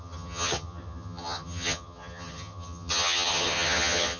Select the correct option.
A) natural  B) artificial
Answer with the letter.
B